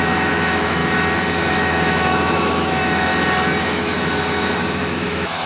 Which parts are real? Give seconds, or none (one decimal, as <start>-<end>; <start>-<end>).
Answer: 0.8-1.5; 3.1-3.6